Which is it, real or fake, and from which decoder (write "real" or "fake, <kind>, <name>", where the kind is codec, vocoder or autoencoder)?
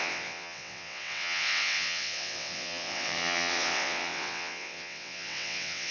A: fake, vocoder, WaveNeXt